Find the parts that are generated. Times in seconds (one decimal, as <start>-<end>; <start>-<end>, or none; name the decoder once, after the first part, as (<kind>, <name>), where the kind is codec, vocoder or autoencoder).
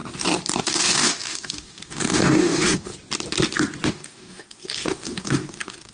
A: 0.6-2.9 (codec, DAC); 3.9-5.9